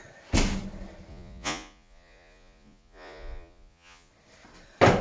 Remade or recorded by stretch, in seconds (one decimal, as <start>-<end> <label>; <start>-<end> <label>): 0.0-1.1 recorded; 1.1-4.1 remade; 4.1-5.0 recorded